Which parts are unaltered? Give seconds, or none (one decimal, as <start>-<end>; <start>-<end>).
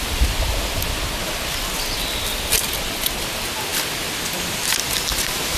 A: 0.0-5.6